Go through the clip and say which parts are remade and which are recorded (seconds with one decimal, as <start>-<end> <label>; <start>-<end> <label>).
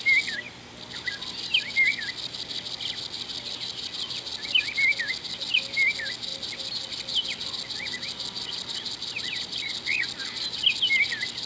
0.0-11.5 recorded